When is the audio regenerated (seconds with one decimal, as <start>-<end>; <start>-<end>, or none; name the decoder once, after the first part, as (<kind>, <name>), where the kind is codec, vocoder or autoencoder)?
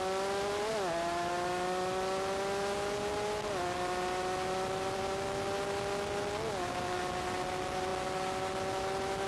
none